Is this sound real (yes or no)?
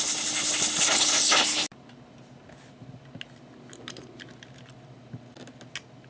yes